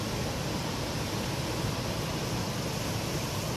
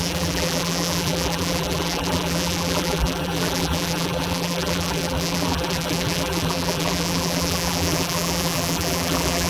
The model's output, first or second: second